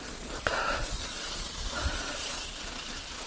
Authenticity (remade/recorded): remade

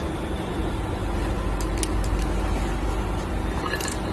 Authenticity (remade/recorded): recorded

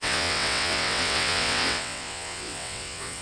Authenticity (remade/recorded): remade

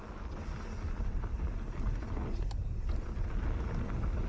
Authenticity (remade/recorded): recorded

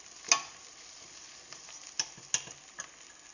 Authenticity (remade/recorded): recorded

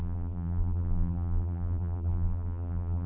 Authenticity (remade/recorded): remade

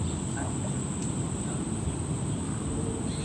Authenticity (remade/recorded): recorded